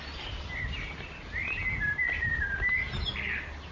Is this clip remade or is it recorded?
recorded